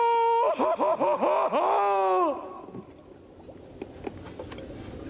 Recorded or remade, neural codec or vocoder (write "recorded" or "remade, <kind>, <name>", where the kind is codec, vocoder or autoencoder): recorded